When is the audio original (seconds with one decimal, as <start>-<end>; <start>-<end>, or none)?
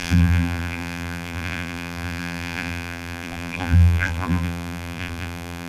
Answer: none